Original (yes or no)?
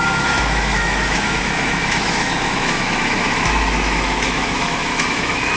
no